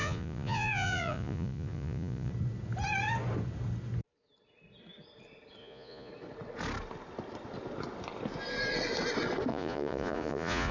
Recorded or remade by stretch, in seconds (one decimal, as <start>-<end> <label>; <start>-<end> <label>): 0.0-2.3 remade; 2.3-5.6 recorded; 5.6-6.1 remade; 6.1-9.5 recorded; 9.5-10.7 remade